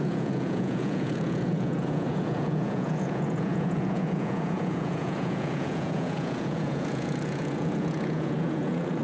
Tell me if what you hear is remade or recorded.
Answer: remade